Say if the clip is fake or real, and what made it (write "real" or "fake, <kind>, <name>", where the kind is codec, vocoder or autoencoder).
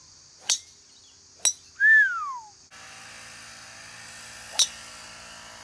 real